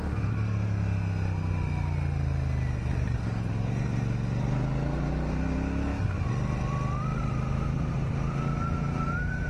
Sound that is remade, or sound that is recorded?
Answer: recorded